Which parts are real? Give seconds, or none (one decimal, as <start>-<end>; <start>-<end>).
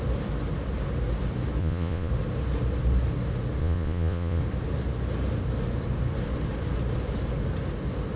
0.0-1.6; 2.1-3.6; 4.4-8.2